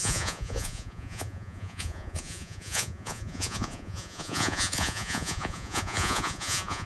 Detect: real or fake fake